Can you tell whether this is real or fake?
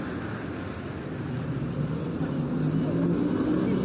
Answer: real